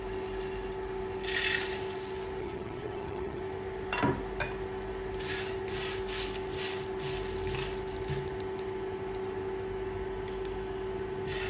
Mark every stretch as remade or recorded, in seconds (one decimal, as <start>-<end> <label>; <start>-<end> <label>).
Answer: 0.0-2.4 recorded; 2.4-3.4 remade; 3.4-11.5 recorded